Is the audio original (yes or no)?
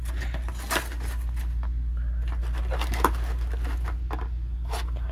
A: yes